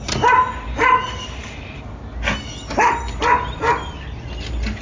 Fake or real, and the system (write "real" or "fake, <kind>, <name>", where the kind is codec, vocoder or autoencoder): real